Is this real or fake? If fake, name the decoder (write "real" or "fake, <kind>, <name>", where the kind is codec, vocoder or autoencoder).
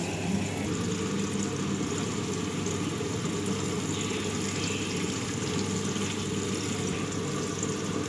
real